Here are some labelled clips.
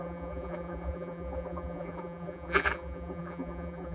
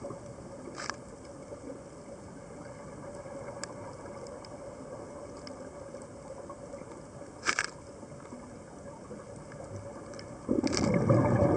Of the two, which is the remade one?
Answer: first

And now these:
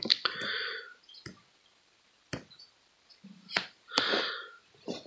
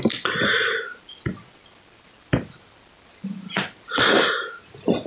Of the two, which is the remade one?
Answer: first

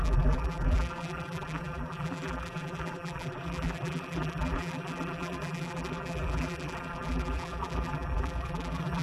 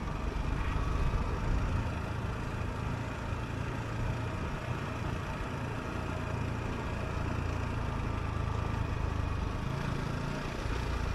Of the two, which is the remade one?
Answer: first